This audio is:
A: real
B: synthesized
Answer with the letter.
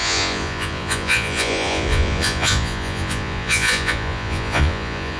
B